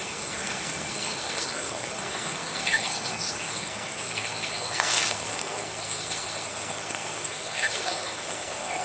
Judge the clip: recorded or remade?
remade